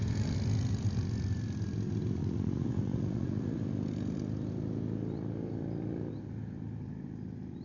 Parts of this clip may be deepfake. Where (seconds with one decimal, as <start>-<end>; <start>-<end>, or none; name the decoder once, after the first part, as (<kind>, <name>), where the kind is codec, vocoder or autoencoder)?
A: 2.2-3.6 (vocoder, Vocos)